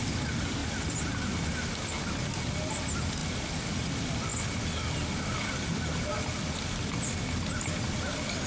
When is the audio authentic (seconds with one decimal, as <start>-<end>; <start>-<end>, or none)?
0.0-8.5